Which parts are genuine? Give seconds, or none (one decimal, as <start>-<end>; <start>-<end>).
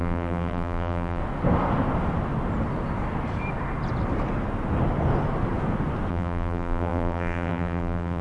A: 1.2-6.1